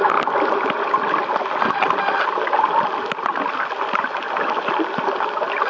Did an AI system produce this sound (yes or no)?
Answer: no